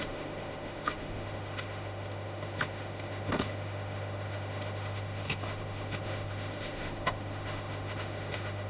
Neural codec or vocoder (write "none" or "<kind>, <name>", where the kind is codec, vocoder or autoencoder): autoencoder, DAC-VAE